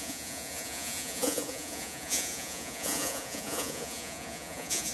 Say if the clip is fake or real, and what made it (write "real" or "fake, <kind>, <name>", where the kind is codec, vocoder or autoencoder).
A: fake, vocoder, Vocos